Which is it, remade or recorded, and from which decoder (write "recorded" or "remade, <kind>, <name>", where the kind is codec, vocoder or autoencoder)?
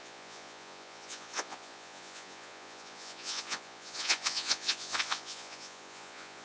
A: remade, vocoder, Vocos